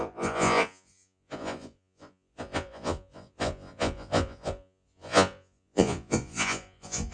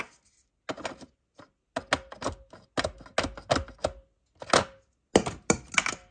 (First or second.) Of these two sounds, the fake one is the first